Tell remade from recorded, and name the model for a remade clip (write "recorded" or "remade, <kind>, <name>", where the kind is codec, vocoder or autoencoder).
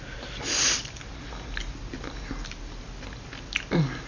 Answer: recorded